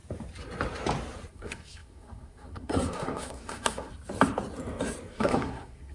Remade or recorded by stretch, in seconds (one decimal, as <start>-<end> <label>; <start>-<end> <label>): 0.0-1.3 recorded; 1.3-3.9 remade; 3.9-5.1 recorded; 5.1-5.9 remade